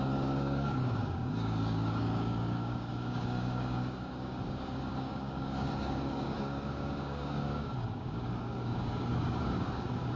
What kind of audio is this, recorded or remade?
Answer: remade